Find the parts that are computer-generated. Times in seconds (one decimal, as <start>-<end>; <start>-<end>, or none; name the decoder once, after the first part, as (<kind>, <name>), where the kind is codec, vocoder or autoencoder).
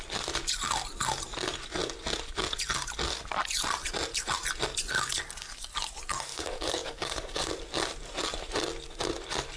6.3-7.5 (codec, DAC)